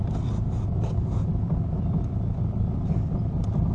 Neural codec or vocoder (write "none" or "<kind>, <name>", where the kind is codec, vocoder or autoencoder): none